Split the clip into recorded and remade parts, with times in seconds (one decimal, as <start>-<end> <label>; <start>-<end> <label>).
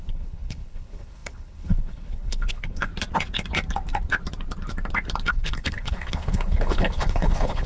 0.0-2.9 remade; 2.9-5.3 recorded; 5.3-7.7 remade